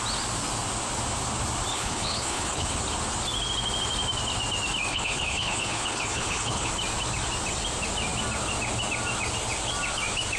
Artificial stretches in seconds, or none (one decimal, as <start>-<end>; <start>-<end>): 1.7-2.8; 4.9-6.7